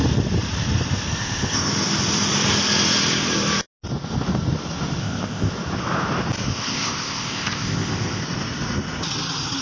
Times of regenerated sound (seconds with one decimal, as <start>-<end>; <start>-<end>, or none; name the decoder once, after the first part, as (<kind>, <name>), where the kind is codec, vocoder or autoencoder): 1.2-1.7 (codec, ZipCodec); 5.0-5.5; 6.5-8.2